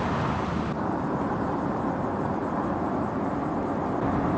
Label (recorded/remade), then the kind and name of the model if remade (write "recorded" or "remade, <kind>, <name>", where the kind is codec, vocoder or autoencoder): recorded